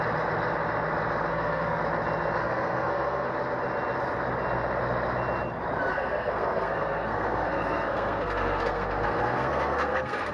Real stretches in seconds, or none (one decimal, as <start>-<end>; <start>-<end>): 0.0-1.3; 1.8-2.4; 3.3-5.9